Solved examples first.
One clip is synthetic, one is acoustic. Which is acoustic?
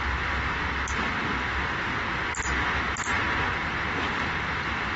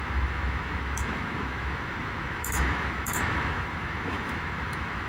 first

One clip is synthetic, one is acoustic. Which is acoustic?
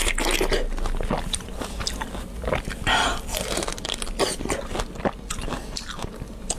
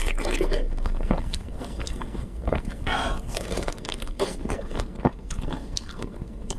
first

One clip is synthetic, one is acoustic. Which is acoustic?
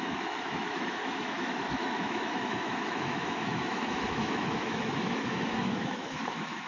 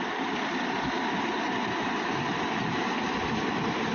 second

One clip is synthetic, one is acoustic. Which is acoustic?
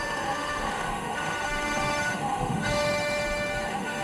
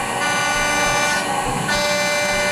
second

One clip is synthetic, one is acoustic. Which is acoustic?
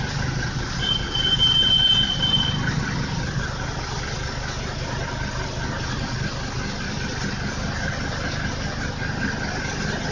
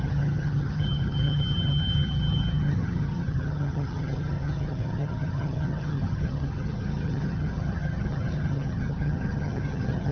first